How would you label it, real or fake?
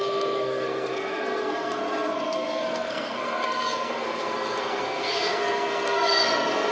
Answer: fake